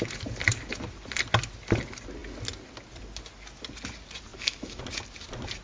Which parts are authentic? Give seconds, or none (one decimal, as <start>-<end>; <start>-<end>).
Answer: 0.0-4.3; 4.8-5.6